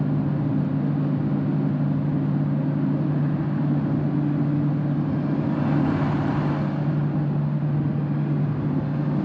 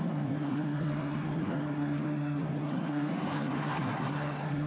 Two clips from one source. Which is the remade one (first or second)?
second